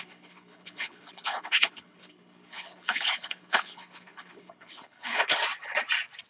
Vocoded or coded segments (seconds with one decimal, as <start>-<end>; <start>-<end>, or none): 0.0-5.4